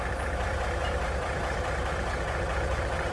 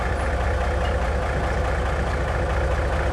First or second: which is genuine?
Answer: second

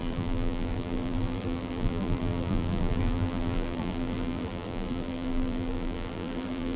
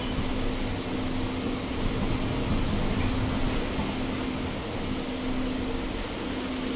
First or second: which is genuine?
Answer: second